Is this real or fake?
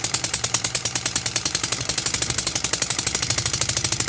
fake